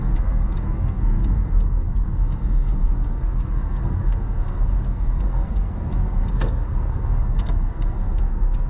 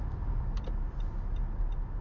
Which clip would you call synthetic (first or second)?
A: first